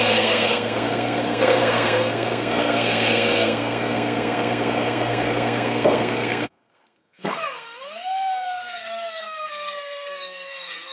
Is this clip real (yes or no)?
no